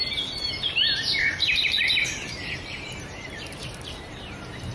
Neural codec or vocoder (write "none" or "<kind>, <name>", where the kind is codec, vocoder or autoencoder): vocoder, BigVGAN v2